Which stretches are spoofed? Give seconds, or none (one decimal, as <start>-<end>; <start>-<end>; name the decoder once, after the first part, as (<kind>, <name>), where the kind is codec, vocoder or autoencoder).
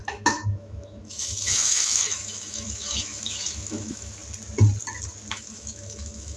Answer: 0.0-4.2 (autoencoder, DAC-VAE); 5.3-6.4